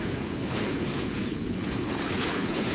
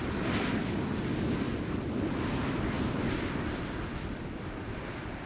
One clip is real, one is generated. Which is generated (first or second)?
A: first